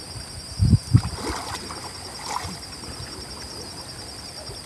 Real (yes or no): yes